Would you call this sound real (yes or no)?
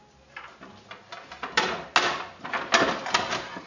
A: yes